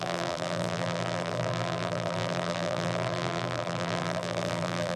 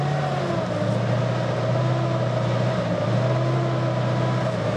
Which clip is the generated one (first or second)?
first